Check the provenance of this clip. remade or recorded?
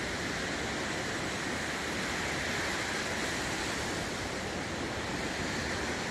recorded